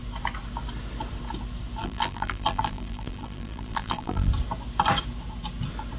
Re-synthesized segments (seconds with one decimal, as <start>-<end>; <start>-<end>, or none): 1.8-4.3